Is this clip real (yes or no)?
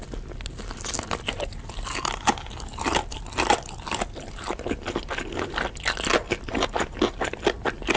yes